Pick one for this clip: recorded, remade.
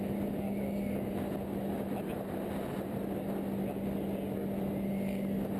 recorded